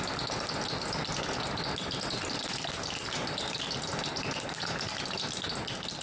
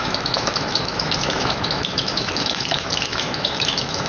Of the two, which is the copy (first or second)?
second